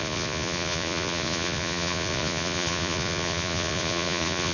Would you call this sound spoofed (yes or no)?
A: yes